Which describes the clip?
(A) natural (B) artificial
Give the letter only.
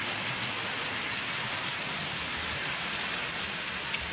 A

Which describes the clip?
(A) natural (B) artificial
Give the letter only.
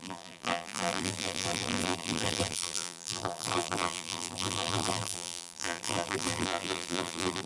B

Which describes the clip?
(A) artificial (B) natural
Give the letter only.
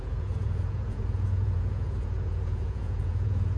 A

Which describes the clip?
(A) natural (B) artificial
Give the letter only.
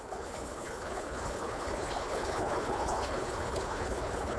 B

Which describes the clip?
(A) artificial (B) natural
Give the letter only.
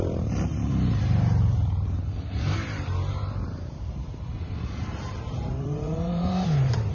A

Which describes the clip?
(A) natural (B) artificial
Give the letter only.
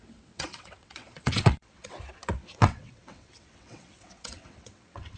B